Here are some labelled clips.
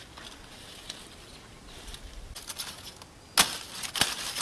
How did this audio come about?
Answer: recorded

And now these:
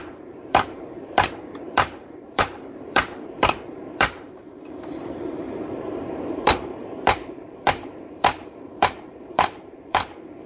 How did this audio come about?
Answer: remade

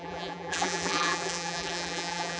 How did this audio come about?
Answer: remade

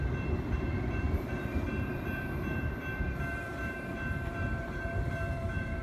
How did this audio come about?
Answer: remade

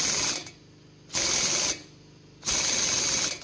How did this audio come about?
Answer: recorded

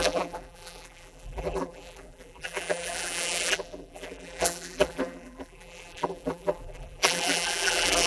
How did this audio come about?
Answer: remade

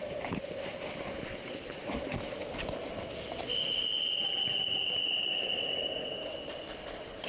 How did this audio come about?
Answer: recorded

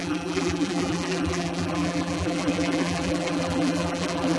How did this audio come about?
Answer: remade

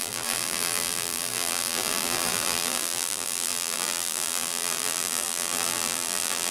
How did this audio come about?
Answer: remade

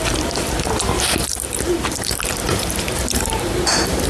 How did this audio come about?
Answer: remade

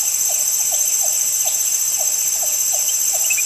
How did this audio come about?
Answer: remade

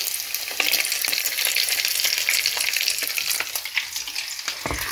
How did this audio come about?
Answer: recorded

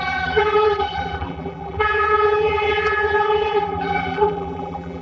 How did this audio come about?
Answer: remade